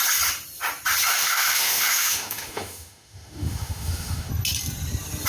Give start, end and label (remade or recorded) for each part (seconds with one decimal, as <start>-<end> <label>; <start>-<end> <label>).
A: 0.0-1.1 recorded; 1.1-4.3 remade; 4.3-5.3 recorded